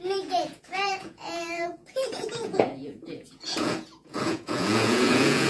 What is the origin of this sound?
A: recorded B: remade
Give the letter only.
B